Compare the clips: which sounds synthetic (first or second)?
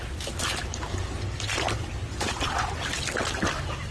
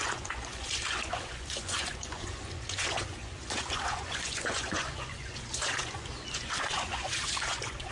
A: second